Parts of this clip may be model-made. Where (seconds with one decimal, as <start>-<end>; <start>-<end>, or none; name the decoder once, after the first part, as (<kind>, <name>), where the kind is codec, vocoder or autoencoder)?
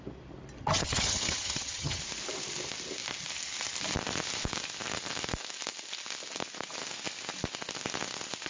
0.6-2.0 (vocoder, HiFi-GAN)